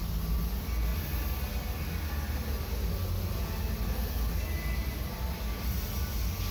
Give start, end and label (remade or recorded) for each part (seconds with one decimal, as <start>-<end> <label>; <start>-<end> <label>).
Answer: 0.0-6.5 recorded

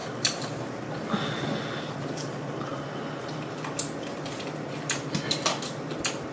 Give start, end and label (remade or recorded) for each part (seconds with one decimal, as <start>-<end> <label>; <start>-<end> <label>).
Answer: 0.0-6.3 recorded

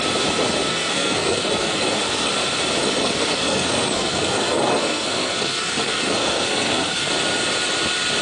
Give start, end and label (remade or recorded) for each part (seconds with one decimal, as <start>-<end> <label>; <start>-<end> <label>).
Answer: 0.0-0.7 recorded; 0.7-2.3 remade; 2.3-2.8 recorded; 2.8-7.1 remade; 7.1-8.2 recorded

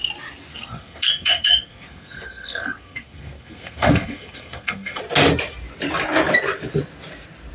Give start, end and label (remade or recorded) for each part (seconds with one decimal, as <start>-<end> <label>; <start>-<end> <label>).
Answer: 0.0-0.5 recorded; 0.5-5.0 remade; 5.0-7.5 recorded

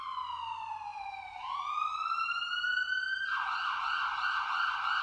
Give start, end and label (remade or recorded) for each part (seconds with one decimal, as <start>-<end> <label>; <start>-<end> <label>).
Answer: 0.0-0.9 recorded; 0.9-2.4 remade; 2.4-4.1 recorded; 4.1-5.0 remade

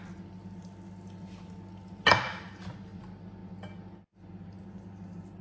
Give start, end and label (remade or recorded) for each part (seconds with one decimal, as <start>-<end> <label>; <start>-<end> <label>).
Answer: 0.0-5.4 recorded